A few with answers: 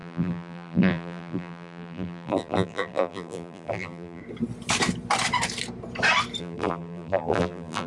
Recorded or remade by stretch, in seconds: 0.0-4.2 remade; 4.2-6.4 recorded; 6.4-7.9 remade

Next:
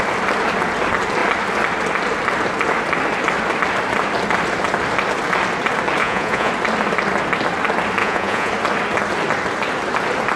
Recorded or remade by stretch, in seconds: 0.0-6.0 recorded; 6.0-6.5 remade; 6.5-8.0 recorded; 8.0-8.5 remade; 8.5-10.4 recorded

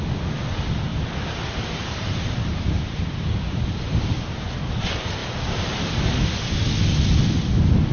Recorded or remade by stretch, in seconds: 0.0-0.9 recorded; 0.9-3.6 remade; 3.6-5.2 recorded; 5.2-6.0 remade; 6.0-7.9 recorded

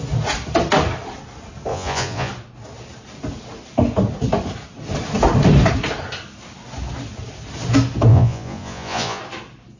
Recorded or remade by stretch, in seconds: 0.0-1.7 recorded; 1.7-2.3 remade; 2.3-8.1 recorded; 8.1-9.2 remade; 9.2-9.8 recorded